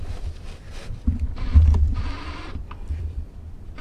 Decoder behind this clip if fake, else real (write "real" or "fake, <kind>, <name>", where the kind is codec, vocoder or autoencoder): fake, vocoder, BigVGAN v2